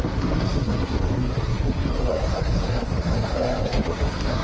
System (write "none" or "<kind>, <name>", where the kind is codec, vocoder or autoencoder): codec, SNAC